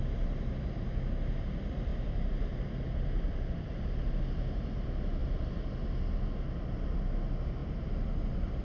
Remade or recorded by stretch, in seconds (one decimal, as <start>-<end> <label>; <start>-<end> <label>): 0.0-1.9 recorded; 1.9-4.1 remade; 4.1-5.2 recorded; 5.2-5.8 remade; 5.8-7.6 recorded; 7.6-8.6 remade